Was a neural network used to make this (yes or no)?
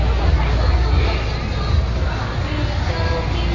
no